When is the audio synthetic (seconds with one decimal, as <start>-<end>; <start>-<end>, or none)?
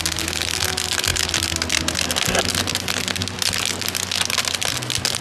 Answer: none